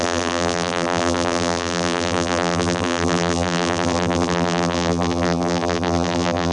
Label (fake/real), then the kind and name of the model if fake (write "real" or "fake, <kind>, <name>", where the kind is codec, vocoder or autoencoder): fake, vocoder, BigVGAN v2